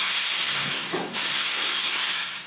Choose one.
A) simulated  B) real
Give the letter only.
A